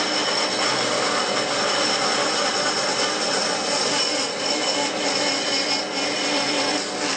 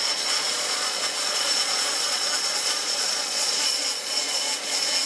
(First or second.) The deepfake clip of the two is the second